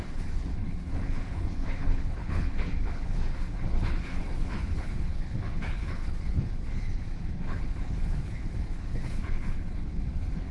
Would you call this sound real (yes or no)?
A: no